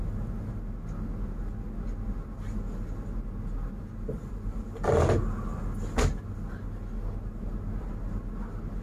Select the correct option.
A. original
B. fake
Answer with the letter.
A